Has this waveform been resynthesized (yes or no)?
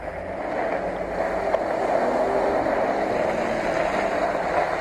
no